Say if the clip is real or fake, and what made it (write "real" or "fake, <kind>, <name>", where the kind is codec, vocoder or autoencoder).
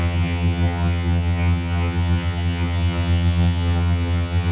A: fake, vocoder, HiFi-GAN